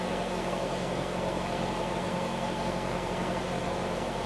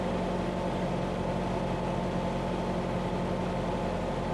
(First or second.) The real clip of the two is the second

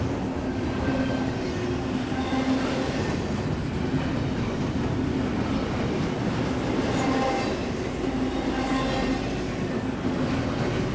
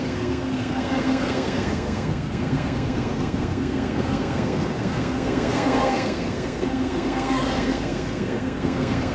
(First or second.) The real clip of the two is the first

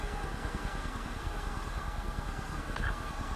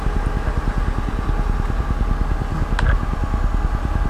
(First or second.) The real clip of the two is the second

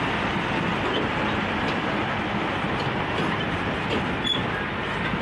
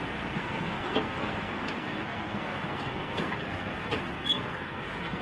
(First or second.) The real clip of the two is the first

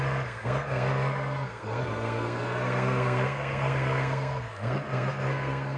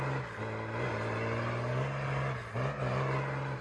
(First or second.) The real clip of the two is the second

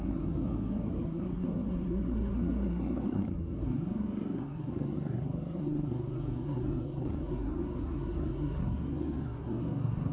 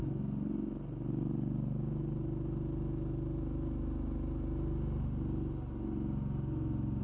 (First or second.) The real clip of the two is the second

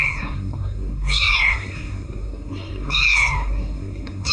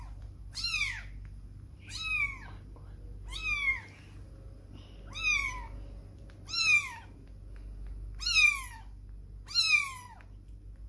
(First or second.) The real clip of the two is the second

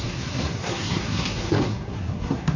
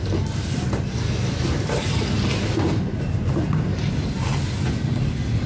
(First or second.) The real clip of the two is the second